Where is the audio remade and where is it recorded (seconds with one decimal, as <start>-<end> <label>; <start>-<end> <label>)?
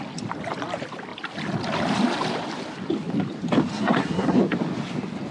0.0-3.7 recorded; 3.7-4.4 remade; 4.4-5.3 recorded